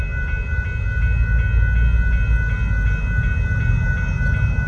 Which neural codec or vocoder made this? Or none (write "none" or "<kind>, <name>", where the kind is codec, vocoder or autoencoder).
none